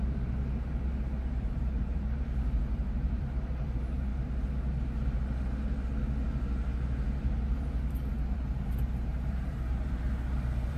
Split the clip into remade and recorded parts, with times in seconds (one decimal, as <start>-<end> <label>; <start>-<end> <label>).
0.0-4.1 remade; 4.1-8.1 recorded; 8.1-10.8 remade